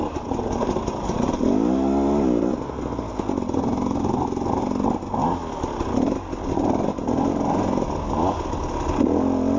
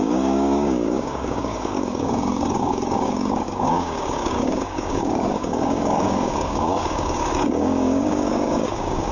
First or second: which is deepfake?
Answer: second